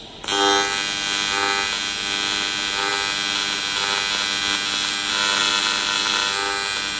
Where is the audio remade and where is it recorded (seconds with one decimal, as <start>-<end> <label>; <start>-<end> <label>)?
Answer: 0.0-7.0 recorded